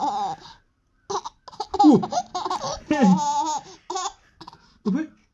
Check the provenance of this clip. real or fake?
real